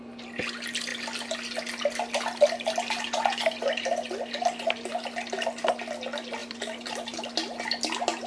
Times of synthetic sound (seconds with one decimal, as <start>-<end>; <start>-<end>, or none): 6.4-7.2